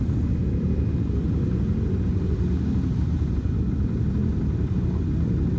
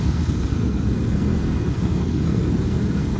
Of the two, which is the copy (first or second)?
second